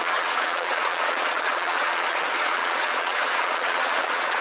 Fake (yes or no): yes